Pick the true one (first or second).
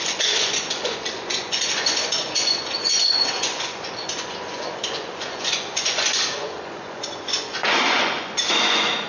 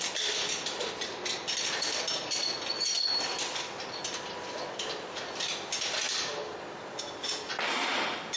second